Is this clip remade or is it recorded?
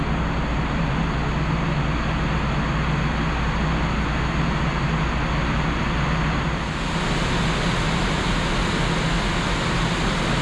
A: recorded